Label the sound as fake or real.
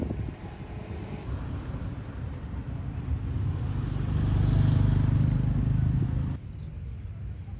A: real